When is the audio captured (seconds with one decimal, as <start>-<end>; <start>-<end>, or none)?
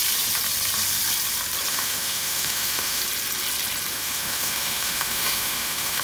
0.0-1.7; 3.0-3.9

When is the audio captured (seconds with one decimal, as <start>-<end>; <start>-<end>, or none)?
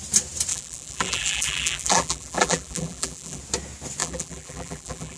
0.0-0.5; 3.4-4.0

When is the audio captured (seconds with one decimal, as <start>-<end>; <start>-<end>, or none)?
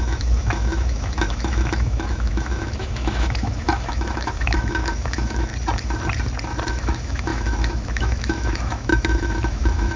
5.5-6.7